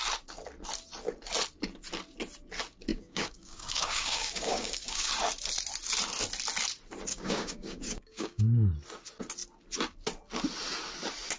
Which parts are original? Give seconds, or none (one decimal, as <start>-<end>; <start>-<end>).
0.0-2.9; 5.1-7.1; 8.4-11.4